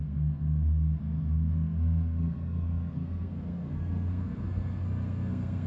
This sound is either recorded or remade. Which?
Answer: remade